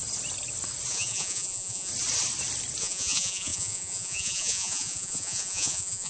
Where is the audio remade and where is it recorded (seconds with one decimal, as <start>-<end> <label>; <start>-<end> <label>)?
0.0-0.9 recorded; 0.9-1.9 remade; 1.9-2.8 recorded; 2.8-6.1 remade